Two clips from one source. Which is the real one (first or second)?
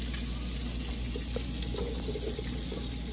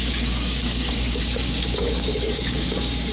first